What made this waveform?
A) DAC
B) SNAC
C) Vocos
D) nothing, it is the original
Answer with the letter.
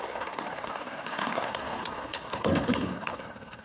B